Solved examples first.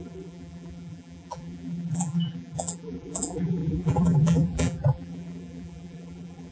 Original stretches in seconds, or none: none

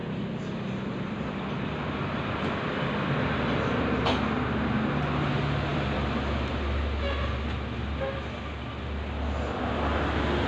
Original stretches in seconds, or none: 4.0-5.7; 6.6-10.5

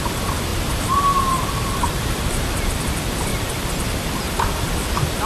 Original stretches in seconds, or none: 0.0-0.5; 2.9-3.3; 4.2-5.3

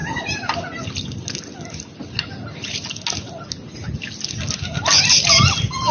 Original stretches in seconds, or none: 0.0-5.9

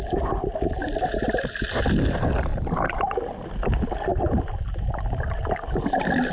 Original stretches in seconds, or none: 0.0-0.5; 1.5-2.5; 3.0-4.1; 4.8-6.3

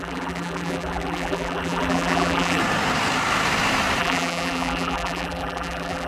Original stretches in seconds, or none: 2.6-4.0